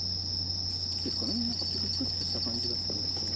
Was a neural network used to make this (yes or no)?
no